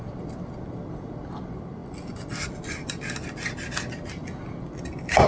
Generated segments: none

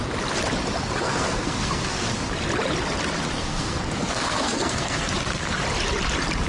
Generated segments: 1.0-2.1 (codec, SNAC); 3.4-5.1

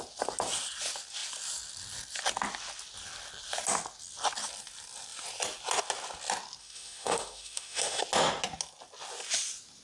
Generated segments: 6.6-8.0 (autoencoder, DAC-VAE)

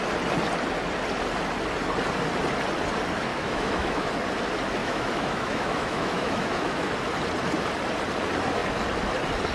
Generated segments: 3.3-4.1 (autoencoder, DAC-VAE); 4.8-6.9

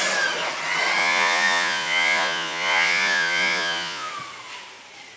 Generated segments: 1.0-4.1 (vocoder, Vocos)

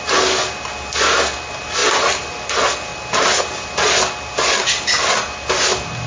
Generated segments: none